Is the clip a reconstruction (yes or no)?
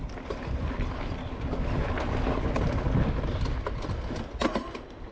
no